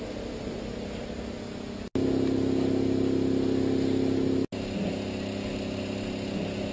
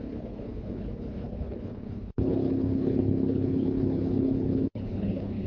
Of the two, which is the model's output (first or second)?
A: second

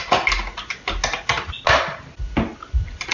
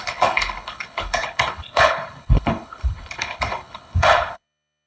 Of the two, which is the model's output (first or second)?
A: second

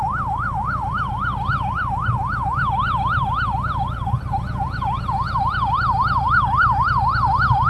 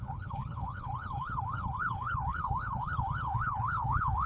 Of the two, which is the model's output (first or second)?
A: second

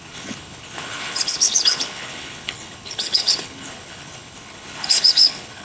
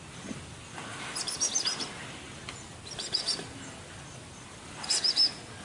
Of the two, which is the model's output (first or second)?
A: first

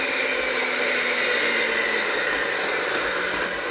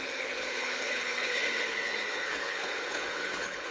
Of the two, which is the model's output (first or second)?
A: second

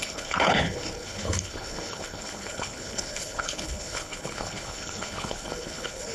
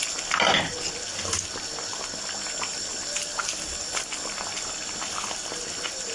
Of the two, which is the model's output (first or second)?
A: first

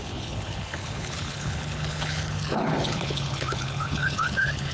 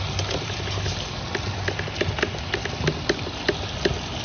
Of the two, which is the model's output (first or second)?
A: first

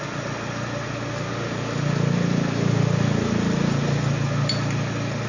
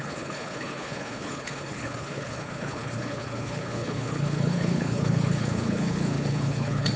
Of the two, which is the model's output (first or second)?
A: second